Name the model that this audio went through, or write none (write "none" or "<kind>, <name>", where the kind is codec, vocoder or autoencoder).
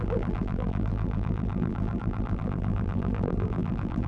vocoder, BigVGAN v2